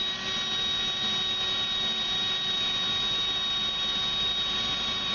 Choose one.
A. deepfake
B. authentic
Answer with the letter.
B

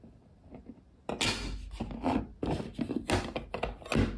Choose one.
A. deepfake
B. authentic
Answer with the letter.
B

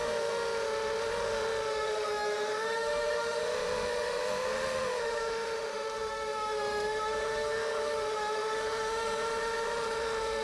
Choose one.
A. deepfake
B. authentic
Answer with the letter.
A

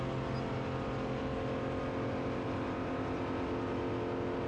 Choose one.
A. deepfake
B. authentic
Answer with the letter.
B